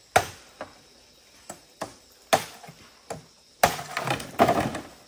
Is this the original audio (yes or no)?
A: yes